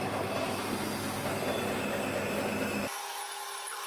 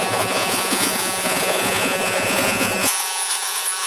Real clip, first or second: first